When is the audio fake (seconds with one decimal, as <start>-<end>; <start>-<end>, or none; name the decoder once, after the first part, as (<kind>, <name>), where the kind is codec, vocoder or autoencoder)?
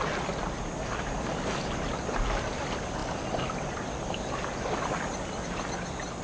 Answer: none